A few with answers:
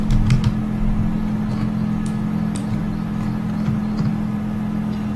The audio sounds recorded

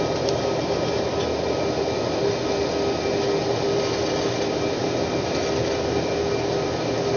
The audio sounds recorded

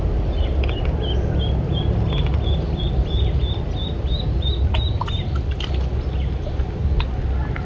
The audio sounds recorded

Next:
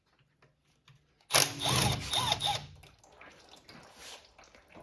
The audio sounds recorded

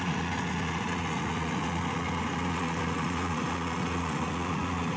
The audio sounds remade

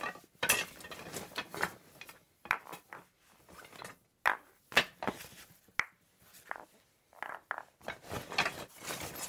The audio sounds recorded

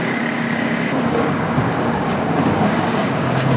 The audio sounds remade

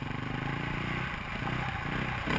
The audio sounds recorded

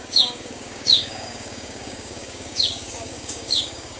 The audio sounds remade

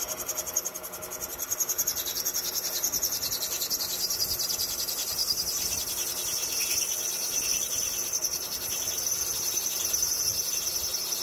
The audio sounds recorded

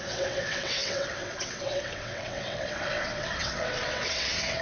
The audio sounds remade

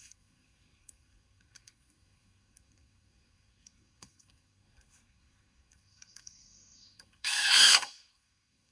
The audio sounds remade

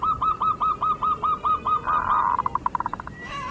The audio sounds recorded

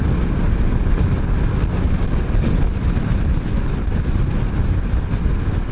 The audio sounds recorded